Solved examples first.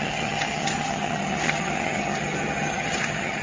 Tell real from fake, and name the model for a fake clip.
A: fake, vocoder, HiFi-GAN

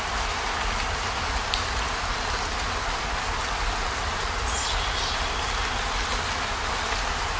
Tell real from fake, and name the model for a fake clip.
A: real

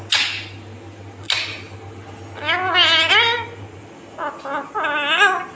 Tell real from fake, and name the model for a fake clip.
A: real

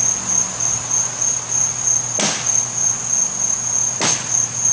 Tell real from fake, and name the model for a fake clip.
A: real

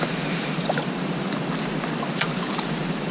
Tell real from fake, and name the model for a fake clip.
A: real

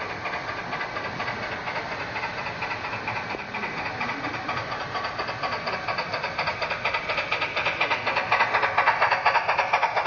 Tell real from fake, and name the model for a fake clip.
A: real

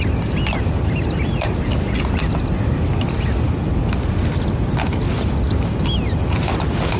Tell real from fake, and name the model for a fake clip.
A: real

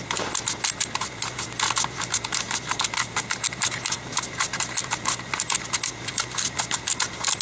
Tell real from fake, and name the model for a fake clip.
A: real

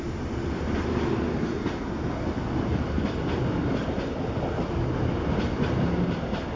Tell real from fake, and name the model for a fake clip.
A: real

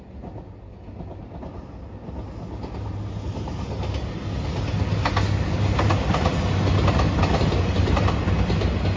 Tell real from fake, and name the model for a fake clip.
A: real